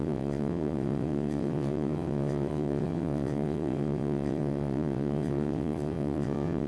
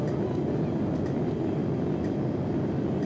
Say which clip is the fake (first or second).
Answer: first